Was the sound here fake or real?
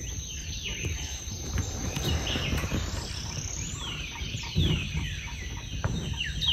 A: fake